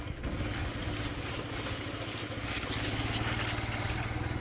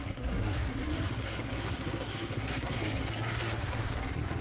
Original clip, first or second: first